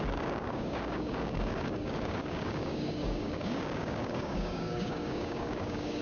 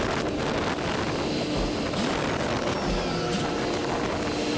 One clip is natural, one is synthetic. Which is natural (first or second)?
second